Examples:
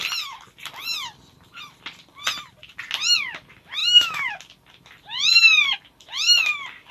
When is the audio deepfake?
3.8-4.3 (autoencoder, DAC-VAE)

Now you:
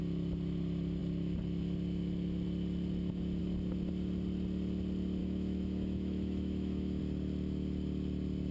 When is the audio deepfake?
5.2-7.0 (autoencoder, DAC-VAE)

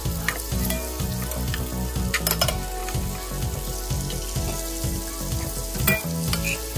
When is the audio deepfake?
none